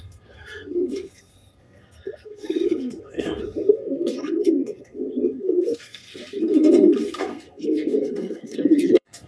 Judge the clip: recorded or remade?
remade